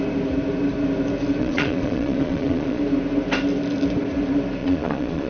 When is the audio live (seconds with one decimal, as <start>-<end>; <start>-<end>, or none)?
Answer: 0.0-1.4; 2.8-4.6

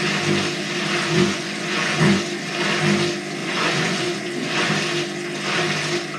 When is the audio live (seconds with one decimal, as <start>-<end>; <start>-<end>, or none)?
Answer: 0.0-1.0; 2.2-3.4; 4.7-6.2

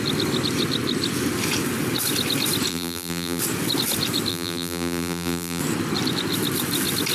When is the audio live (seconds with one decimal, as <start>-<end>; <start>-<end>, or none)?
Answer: 0.0-2.7; 3.4-4.3; 5.6-7.1

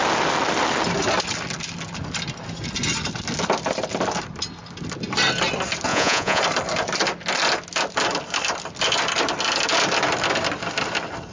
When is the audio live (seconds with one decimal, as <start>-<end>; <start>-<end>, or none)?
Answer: 0.0-5.9; 6.4-11.3

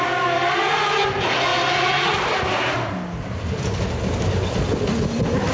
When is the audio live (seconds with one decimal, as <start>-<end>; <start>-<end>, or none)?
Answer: 0.0-5.5